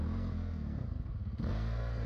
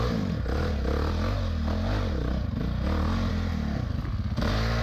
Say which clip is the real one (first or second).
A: second